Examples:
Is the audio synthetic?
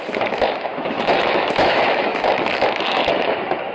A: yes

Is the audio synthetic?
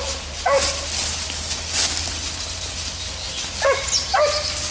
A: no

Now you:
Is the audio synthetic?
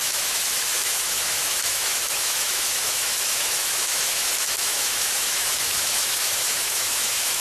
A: yes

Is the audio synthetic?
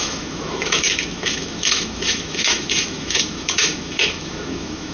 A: yes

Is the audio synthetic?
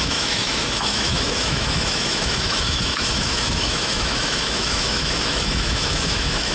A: yes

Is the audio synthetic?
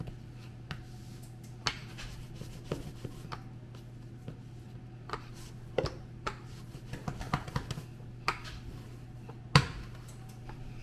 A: no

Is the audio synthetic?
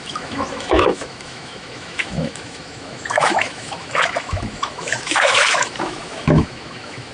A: yes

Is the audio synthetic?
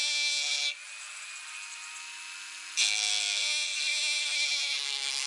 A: no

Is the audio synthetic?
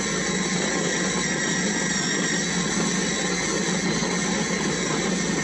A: no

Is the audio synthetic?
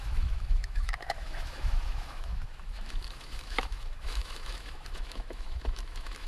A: yes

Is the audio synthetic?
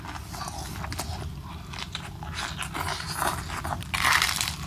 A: no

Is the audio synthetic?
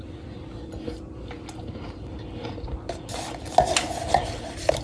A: no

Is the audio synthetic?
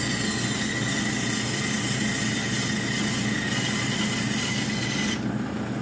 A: no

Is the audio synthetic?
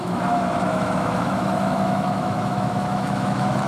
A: yes